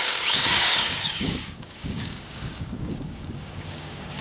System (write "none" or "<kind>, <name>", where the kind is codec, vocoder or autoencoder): codec, DAC